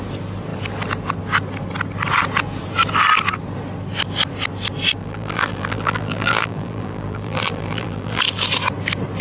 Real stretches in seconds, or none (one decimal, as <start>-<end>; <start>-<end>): 0.0-5.0; 8.2-9.2